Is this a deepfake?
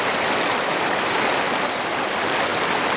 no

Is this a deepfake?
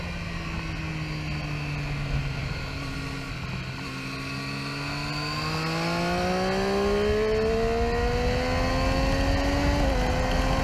no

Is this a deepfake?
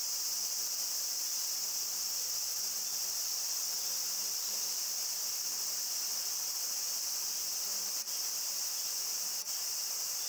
no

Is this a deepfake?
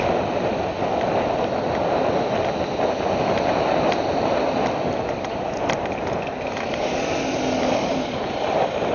no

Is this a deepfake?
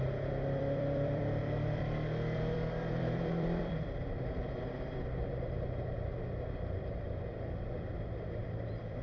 yes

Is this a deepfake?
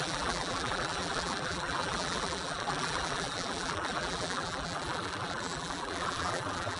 yes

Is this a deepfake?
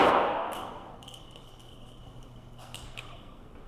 yes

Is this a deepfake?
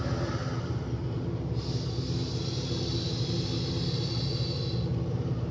no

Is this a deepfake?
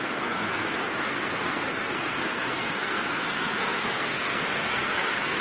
yes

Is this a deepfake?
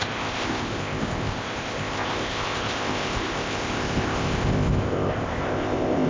yes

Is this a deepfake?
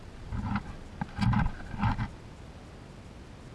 no